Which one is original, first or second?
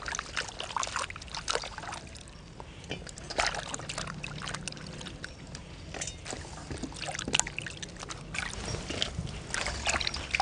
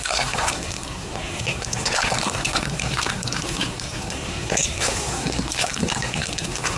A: first